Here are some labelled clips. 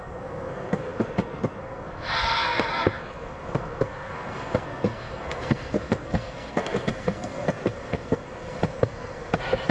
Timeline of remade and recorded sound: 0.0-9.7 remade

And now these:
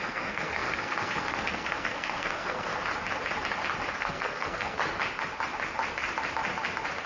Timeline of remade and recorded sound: 0.0-2.7 remade; 2.7-4.0 recorded; 4.0-4.8 remade; 4.8-7.1 recorded

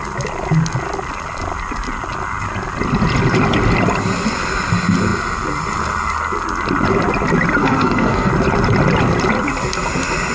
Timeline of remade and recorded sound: 0.0-7.6 recorded; 7.6-8.3 remade; 8.3-10.3 recorded

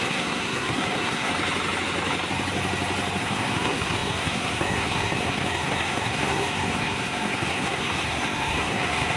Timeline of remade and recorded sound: 0.0-1.3 remade; 1.3-3.2 recorded; 3.2-9.2 remade

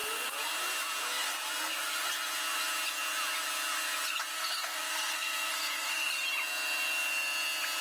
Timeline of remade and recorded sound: 0.0-4.3 recorded; 4.3-6.1 remade; 6.1-7.8 recorded

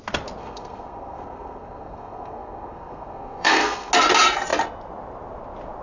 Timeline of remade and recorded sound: 0.0-0.4 recorded; 0.4-3.9 remade; 3.9-5.8 recorded